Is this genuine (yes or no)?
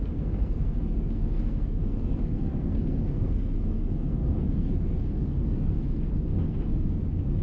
no